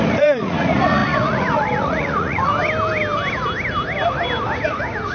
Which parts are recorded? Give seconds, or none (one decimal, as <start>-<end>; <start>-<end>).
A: 2.5-5.1